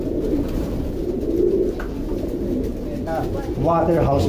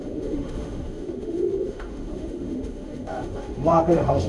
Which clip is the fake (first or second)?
second